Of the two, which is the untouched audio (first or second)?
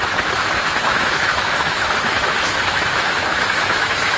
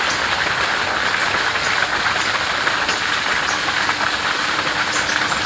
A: second